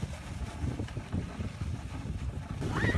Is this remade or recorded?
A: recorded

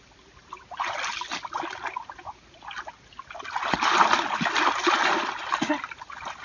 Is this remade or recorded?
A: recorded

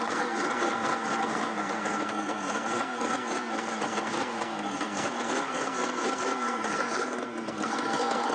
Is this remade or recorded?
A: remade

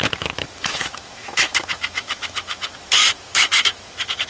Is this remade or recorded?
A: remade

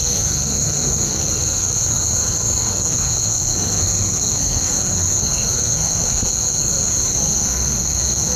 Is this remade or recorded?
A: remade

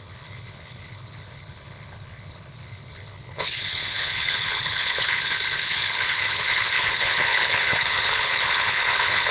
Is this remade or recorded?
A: remade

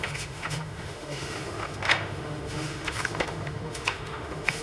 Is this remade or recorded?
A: remade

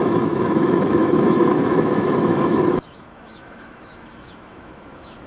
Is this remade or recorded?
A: remade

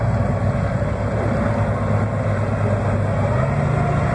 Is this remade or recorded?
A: recorded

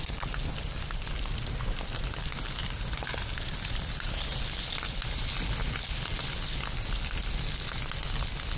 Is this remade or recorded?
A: recorded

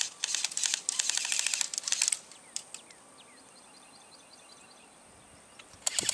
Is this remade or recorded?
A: remade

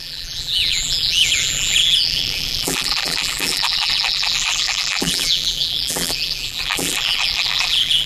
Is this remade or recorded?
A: remade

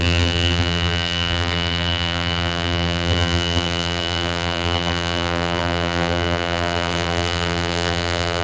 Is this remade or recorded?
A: remade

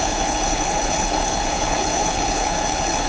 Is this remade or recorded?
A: remade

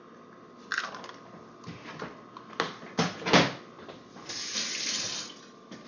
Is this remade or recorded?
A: recorded